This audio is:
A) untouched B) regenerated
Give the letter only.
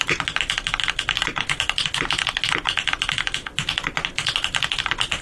A